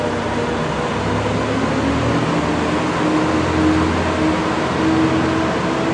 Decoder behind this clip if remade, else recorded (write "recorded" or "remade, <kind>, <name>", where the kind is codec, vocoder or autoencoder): recorded